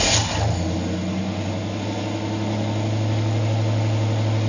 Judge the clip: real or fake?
real